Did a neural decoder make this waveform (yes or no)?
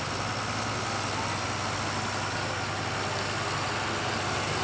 no